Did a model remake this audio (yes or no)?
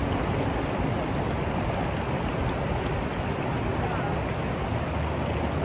no